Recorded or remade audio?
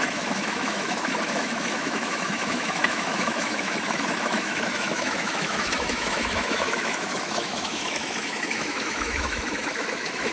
remade